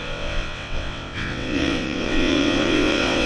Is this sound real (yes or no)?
no